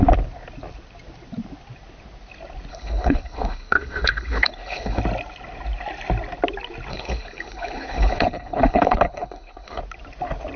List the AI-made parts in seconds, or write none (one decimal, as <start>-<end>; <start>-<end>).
2.7-5.0; 6.9-9.8